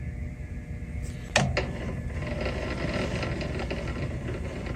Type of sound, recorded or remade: recorded